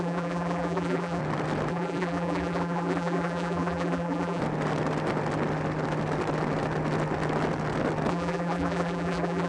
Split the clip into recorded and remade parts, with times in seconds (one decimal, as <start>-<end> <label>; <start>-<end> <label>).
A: 0.0-1.2 remade; 1.2-1.7 recorded; 1.7-4.4 remade; 4.4-8.1 recorded; 8.1-9.5 remade